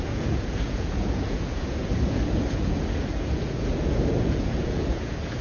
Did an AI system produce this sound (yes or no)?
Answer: yes